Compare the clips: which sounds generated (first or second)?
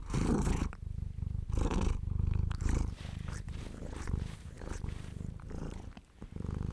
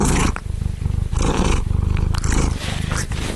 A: first